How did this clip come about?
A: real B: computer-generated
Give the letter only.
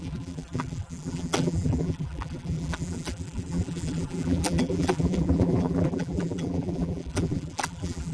B